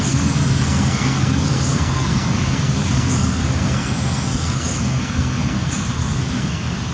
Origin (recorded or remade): remade